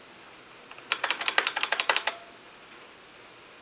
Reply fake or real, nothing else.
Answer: real